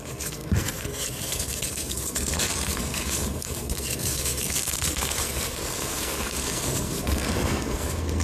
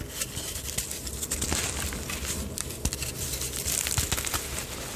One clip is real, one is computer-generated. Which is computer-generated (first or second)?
first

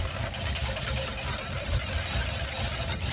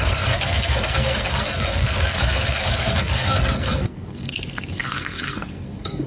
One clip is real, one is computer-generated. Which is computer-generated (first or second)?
second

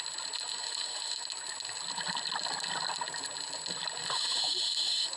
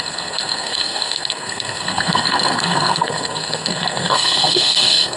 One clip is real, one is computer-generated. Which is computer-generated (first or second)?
second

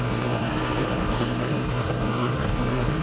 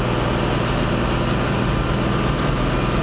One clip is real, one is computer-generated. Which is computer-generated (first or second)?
first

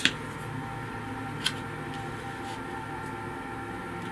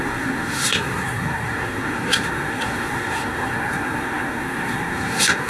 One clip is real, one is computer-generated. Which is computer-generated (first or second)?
second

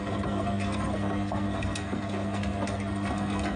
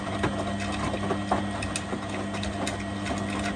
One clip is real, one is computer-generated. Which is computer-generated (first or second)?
first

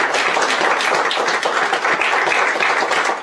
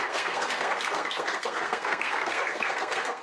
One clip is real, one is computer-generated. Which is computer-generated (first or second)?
second